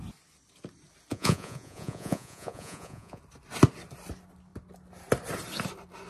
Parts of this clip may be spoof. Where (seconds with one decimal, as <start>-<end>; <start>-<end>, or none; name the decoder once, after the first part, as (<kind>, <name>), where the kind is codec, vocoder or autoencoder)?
1.1-3.2 (vocoder, Vocos)

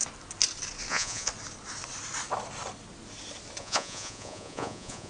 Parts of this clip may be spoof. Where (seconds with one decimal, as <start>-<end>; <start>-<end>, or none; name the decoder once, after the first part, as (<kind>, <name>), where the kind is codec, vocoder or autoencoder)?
0.9-1.3 (vocoder, Vocos); 3.6-5.1